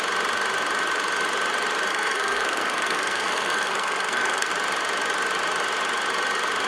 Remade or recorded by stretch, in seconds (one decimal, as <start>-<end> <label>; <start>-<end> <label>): 0.0-1.9 recorded; 1.9-4.5 remade; 4.5-6.7 recorded